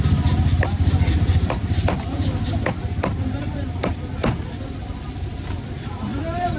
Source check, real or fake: real